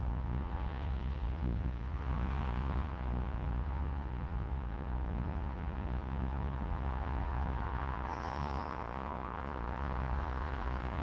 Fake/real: fake